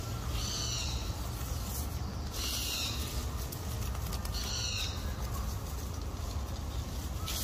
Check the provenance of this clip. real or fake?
real